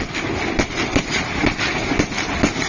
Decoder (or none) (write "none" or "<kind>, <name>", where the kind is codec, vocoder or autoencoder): none